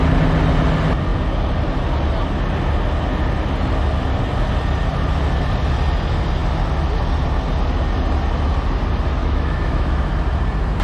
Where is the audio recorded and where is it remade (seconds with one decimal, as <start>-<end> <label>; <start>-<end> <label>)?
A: 0.0-9.2 recorded; 9.2-10.1 remade; 10.1-10.8 recorded